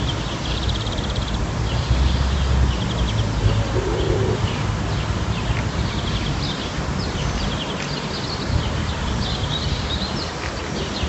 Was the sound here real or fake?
real